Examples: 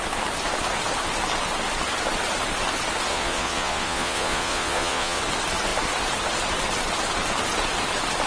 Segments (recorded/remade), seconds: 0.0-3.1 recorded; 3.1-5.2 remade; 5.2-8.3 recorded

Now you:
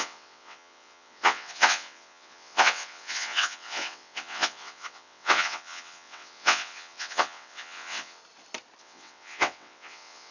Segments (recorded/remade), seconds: 0.0-8.2 remade; 8.2-8.8 recorded; 8.8-10.3 remade